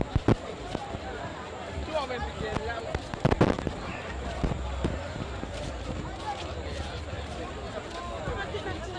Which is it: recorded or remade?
recorded